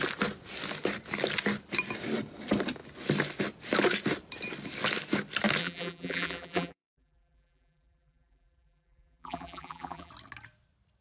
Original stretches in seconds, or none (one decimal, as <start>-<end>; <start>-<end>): 0.0-5.6; 10.1-11.0